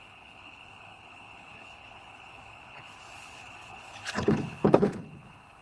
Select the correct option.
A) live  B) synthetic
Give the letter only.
B